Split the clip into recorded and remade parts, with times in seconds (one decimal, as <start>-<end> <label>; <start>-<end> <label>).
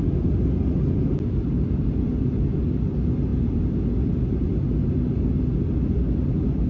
0.0-6.7 recorded